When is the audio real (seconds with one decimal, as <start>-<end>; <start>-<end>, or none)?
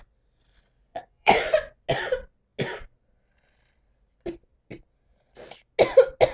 0.0-0.9; 1.8-6.3